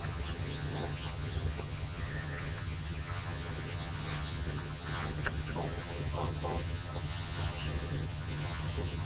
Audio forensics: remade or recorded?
remade